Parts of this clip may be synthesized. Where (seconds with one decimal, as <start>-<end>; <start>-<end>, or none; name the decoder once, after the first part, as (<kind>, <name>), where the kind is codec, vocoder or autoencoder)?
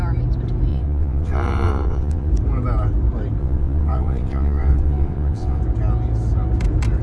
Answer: 0.7-2.3 (vocoder, WaveNeXt); 3.4-5.6